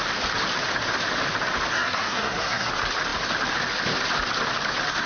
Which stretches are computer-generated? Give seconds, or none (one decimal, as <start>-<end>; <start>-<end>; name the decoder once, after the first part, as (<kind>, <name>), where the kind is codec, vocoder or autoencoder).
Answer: 1.7-2.7 (codec, SNAC)